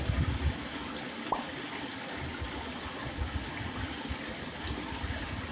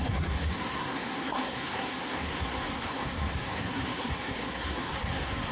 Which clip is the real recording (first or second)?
first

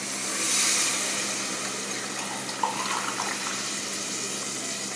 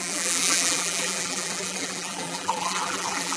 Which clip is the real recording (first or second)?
first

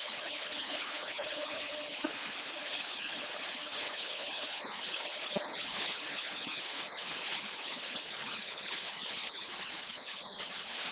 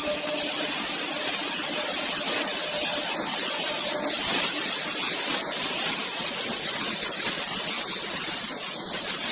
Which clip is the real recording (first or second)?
second